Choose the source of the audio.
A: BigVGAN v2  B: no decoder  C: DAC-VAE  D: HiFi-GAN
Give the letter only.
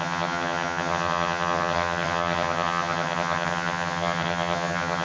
D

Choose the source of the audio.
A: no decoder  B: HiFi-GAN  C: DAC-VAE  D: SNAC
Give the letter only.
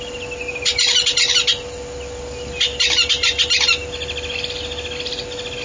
A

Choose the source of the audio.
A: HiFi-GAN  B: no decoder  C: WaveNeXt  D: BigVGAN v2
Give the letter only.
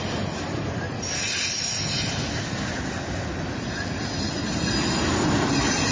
B